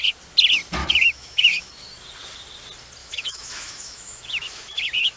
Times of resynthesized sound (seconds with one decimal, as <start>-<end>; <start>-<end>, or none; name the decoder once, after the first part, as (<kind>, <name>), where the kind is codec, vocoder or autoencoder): 0.8-1.7 (autoencoder, DAC-VAE); 3.0-5.2